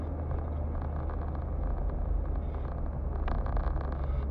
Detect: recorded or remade recorded